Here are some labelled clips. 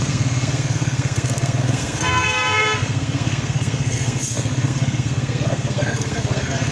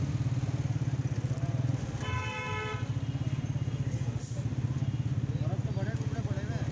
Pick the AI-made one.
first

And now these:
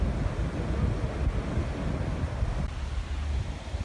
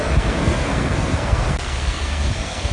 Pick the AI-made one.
second